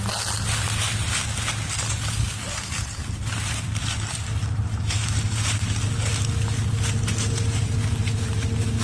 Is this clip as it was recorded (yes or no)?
yes